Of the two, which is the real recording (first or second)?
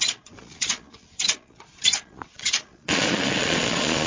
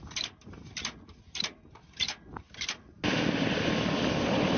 second